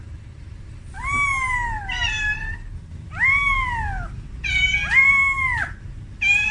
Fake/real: real